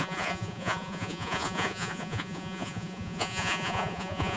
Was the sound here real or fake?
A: fake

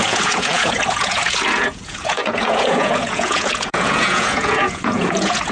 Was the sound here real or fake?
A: fake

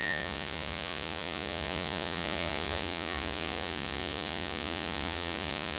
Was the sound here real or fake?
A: fake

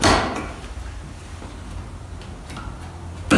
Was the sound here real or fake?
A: real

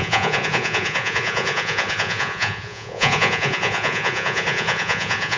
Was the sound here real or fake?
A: fake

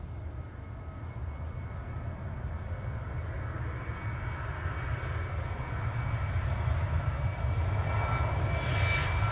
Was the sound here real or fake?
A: real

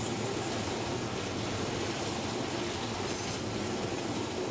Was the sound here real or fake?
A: real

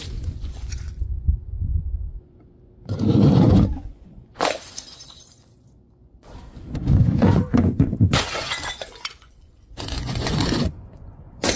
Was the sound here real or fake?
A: fake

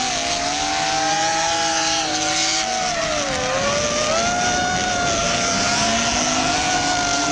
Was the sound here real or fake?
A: real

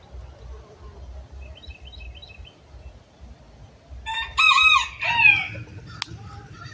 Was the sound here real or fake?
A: real